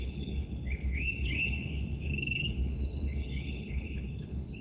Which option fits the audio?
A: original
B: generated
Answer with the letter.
B